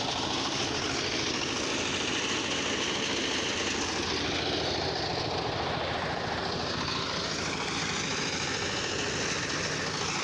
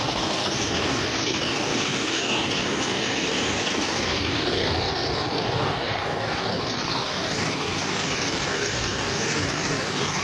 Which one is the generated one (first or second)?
second